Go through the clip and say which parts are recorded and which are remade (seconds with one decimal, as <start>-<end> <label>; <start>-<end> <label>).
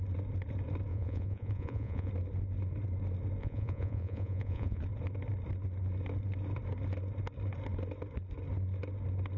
0.0-0.9 recorded; 0.9-2.1 remade; 2.1-3.4 recorded; 3.4-4.8 remade; 4.8-9.4 recorded